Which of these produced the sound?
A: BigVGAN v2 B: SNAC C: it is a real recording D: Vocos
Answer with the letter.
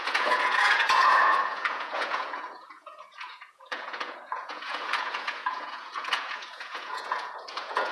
D